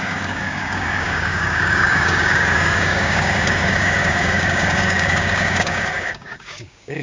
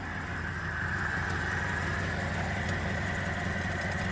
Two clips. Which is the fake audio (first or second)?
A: first